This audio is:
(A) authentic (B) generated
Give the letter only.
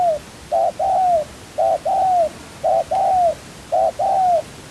A